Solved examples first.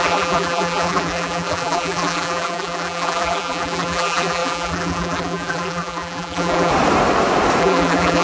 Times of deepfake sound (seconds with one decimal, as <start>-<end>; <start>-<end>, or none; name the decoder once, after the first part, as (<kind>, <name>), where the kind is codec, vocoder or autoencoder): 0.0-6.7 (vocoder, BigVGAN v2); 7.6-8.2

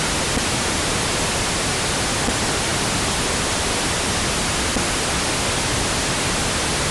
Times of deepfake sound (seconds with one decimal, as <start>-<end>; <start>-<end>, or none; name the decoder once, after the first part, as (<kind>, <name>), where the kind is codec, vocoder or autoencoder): none

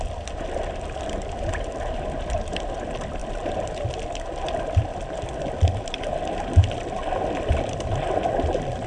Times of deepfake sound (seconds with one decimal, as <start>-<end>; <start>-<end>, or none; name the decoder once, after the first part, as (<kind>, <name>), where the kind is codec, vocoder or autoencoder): none

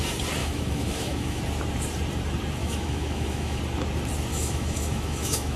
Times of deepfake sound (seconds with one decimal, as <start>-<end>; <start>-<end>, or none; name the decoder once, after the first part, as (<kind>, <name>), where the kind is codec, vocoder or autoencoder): 0.4-1.4 (autoencoder, DAC-VAE); 2.6-3.6; 4.3-5.6

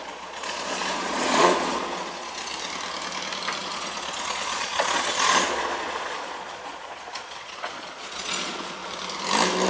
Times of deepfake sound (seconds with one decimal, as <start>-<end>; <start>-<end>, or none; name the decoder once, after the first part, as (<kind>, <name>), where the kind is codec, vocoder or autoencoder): 0.0-2.5 (vocoder, Vocos); 3.6-8.8

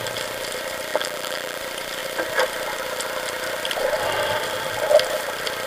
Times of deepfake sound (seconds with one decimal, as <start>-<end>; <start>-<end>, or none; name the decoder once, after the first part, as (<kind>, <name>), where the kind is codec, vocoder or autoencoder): 0.9-1.6 (vocoder, BigVGAN v2)

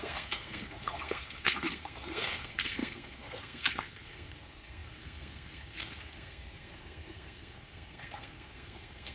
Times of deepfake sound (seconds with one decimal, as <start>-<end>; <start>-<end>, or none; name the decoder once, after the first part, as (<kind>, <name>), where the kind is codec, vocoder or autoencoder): 0.0-9.1 (codec, SNAC)

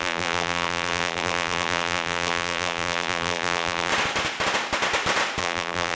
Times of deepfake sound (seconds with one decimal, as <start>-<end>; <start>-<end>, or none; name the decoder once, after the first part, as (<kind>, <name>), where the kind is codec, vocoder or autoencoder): 0.0-3.9 (vocoder, BigVGAN v2); 5.4-5.9